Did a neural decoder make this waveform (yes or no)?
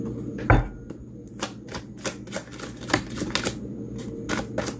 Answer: no